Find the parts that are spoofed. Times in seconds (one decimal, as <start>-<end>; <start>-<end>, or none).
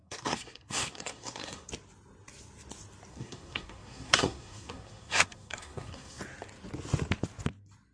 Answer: 0.0-1.7; 3.1-6.2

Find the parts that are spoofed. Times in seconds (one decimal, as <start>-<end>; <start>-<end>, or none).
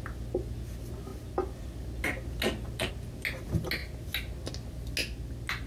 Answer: none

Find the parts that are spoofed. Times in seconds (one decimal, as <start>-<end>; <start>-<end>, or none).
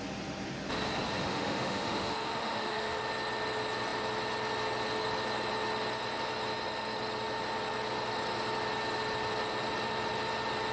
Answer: 1.2-3.0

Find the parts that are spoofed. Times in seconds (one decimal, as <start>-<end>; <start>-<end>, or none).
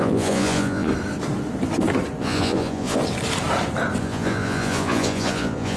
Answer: 0.0-0.9; 2.2-3.0; 4.0-5.8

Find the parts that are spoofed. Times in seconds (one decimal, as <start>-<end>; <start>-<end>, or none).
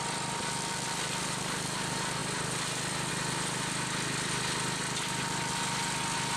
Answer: none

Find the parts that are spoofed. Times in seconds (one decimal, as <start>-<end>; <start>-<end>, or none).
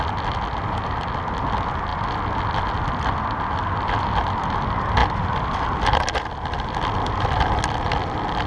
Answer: none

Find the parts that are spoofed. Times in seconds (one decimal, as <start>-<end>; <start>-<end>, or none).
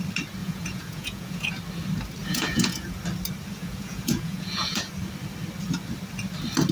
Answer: 0.4-1.5; 2.2-3.0; 3.5-4.9